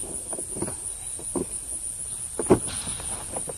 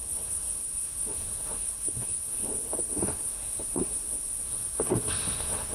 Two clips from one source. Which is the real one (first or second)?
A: first